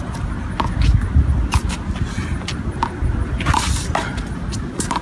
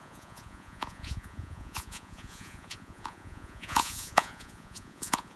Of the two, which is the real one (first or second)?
first